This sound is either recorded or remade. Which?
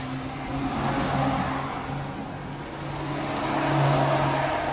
recorded